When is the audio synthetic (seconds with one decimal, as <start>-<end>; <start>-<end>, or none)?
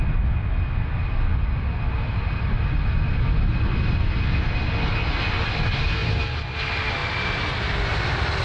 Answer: none